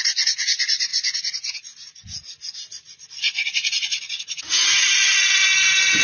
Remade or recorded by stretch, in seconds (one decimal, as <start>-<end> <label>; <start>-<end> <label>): 0.0-6.0 recorded